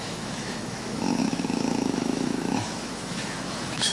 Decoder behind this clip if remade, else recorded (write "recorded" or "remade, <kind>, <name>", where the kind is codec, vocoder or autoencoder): remade, autoencoder, DAC-VAE